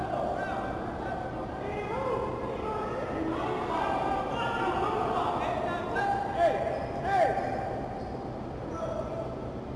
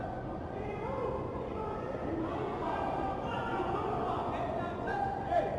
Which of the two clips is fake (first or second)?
second